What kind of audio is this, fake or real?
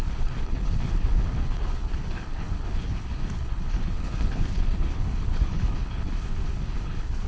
fake